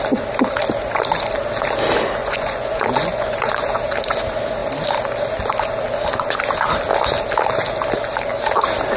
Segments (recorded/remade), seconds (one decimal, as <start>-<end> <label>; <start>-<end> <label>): 0.0-2.2 recorded; 2.2-3.8 remade; 3.8-9.0 recorded